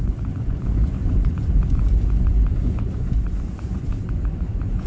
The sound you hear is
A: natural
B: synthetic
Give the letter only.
B